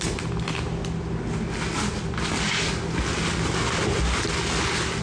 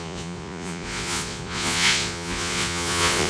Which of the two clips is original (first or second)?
first